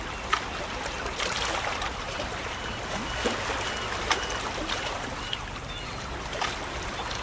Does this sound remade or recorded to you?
recorded